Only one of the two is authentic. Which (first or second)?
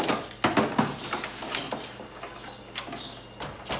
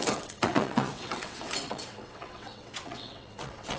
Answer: first